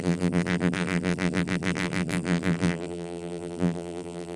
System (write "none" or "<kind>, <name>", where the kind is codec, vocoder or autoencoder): vocoder, BigVGAN v2